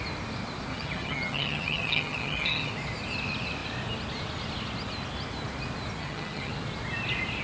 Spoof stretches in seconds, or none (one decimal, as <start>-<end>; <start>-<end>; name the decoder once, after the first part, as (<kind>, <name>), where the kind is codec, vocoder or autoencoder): 0.7-2.7 (vocoder, HiFi-GAN); 6.0-6.5